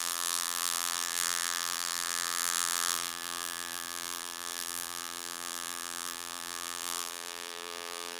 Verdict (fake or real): fake